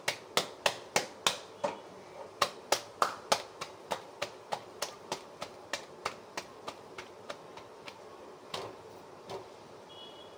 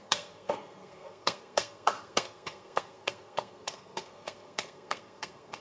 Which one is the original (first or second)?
first